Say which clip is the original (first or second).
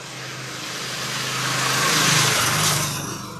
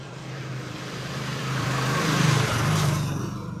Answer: first